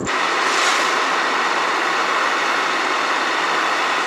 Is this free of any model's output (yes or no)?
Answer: yes